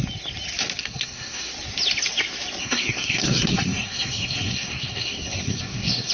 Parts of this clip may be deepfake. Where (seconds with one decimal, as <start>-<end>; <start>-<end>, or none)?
0.8-1.5; 2.6-6.1